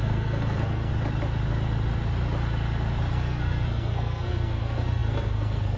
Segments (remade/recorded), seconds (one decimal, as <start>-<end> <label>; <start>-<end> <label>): 0.0-0.9 remade; 0.9-3.1 recorded; 3.1-5.8 remade